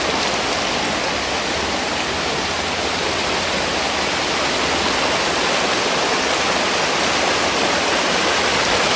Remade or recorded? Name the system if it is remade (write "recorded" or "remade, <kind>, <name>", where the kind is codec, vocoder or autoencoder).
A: recorded